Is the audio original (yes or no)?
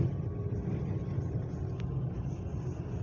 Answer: yes